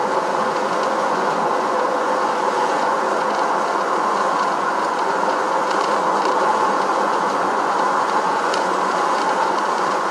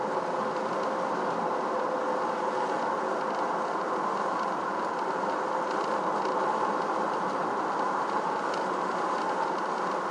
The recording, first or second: second